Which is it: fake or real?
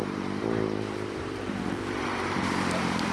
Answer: fake